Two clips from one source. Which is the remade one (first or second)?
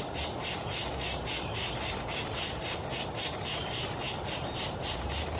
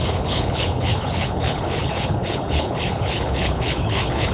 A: second